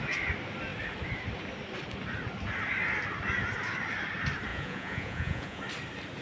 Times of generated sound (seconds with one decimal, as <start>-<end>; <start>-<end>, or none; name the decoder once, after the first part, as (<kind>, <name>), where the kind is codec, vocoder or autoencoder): 4.5-5.6 (vocoder, Vocos)